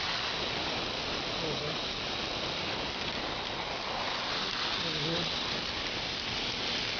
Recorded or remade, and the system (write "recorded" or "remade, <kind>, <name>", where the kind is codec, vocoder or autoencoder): recorded